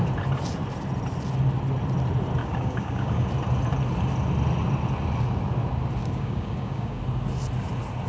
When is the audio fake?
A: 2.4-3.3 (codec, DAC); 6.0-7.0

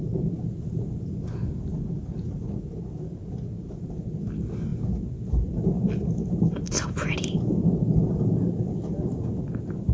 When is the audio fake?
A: none

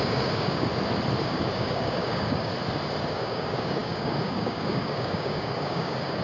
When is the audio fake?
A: 0.0-0.7 (codec, DAC); 1.2-2.5; 3.0-6.2

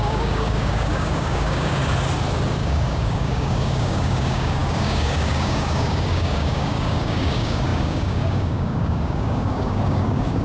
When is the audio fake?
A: 0.0-1.8 (codec, DAC); 2.5-10.4

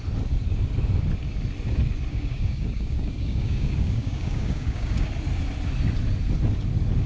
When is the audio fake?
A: 2.1-5.1 (codec, DAC)

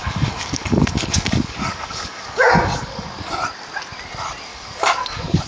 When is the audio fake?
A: 0.0-3.3 (codec, DAC); 4.5-5.5

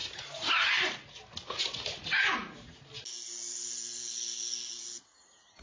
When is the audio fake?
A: none